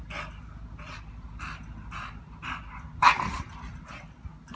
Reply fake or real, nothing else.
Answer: real